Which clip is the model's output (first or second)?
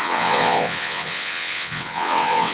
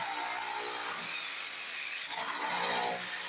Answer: first